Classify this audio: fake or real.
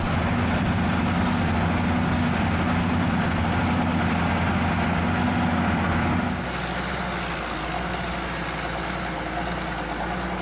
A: real